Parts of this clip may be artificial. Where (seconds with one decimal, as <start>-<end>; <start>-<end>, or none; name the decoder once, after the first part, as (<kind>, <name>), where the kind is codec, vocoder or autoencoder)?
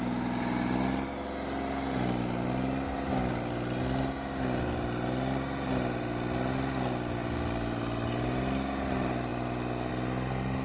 none